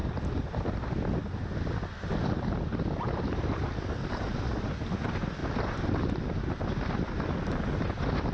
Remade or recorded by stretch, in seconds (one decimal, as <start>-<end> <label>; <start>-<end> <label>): 0.0-8.3 recorded